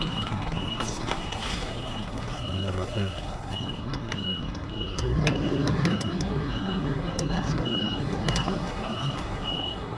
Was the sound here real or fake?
fake